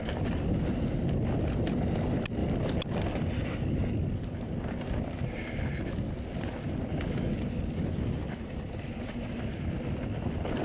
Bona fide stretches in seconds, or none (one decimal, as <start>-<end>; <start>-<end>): 0.0-8.2; 9.4-10.6